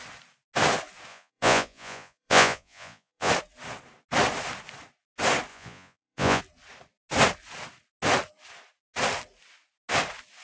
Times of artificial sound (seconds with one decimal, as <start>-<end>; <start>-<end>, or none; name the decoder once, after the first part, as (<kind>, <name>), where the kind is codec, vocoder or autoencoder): 1.1-3.3 (vocoder, Vocos); 5.5-6.4